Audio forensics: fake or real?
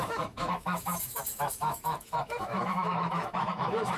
fake